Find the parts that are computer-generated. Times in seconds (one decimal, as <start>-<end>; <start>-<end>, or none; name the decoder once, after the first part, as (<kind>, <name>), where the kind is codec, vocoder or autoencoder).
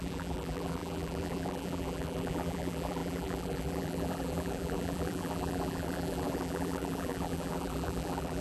0.0-8.4 (vocoder, BigVGAN v2)